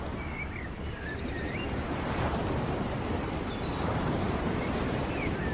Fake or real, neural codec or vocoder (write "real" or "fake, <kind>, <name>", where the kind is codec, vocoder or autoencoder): fake, vocoder, BigVGAN v2